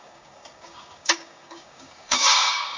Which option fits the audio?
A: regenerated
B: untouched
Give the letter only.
A